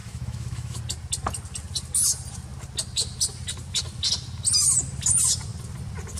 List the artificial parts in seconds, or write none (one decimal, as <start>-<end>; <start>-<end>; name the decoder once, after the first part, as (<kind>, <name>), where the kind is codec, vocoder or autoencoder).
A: 0.0-0.8 (autoencoder, DAC-VAE)